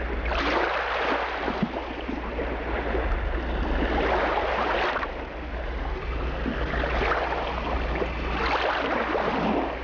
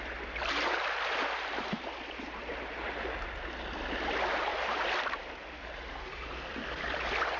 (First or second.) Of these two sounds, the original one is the first